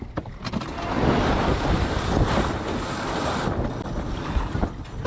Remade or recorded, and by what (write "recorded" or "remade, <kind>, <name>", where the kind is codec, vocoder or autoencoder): recorded